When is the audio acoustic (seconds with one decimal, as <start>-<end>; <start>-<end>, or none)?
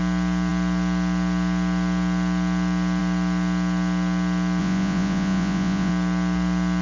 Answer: 0.0-4.6; 5.9-6.8